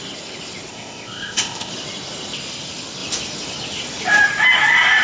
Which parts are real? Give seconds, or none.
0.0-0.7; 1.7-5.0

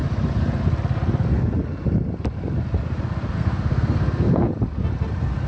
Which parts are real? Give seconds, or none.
0.0-3.3; 4.5-5.5

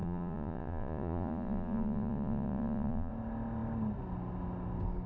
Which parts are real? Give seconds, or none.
3.1-5.1

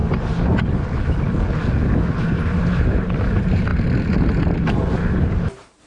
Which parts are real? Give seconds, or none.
0.0-2.2